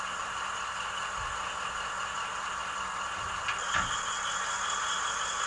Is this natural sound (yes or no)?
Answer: yes